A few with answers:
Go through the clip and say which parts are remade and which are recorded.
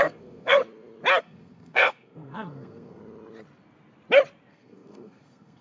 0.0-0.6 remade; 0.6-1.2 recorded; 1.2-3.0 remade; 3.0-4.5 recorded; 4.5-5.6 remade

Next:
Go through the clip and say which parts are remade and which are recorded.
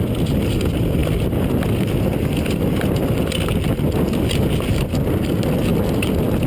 0.0-6.5 recorded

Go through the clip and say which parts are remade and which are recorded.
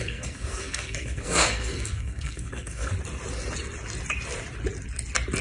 0.0-2.9 remade; 2.9-5.4 recorded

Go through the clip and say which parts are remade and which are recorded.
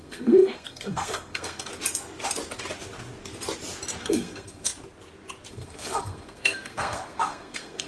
0.0-1.7 remade; 1.7-4.0 recorded; 4.0-4.7 remade; 4.7-5.5 recorded; 5.5-7.9 remade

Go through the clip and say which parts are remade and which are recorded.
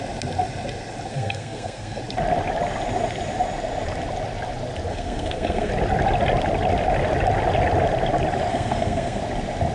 0.0-1.1 recorded; 1.1-2.0 remade; 2.0-4.9 recorded; 4.9-5.7 remade; 5.7-8.5 recorded; 8.5-9.2 remade; 9.2-9.7 recorded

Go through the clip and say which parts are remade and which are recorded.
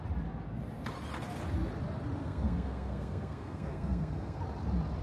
0.0-2.2 recorded; 2.2-4.4 remade; 4.4-5.0 recorded